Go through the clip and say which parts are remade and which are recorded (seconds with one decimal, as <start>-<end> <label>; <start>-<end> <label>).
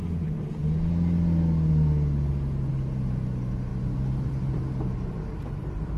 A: 0.0-3.7 recorded; 3.7-4.6 remade; 4.6-6.0 recorded